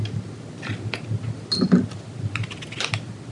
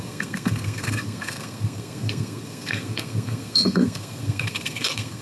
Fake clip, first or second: second